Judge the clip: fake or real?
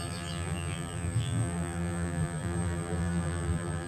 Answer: fake